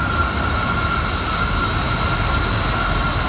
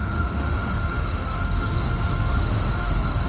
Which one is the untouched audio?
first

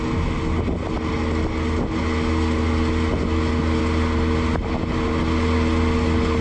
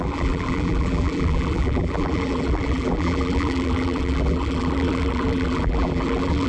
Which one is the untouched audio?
first